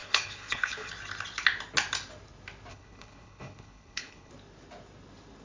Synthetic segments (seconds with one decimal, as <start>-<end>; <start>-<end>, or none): 0.0-0.9; 2.7-4.3

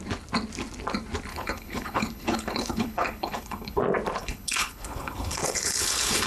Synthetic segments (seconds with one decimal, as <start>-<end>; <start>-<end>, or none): 1.3-3.8; 4.2-6.3

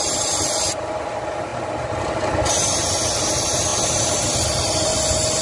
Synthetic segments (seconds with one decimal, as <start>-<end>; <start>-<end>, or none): none

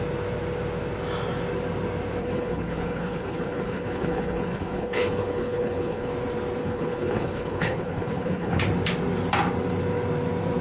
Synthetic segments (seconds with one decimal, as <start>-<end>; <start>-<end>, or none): 2.2-6.1; 6.6-8.6

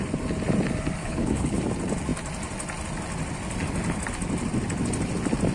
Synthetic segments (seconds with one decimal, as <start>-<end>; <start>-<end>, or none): 1.0-1.6

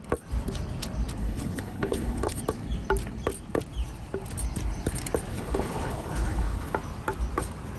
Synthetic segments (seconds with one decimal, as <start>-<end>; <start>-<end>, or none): 1.2-2.4; 5.3-6.7